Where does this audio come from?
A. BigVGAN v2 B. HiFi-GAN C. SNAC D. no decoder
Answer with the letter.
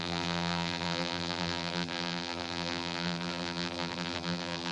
A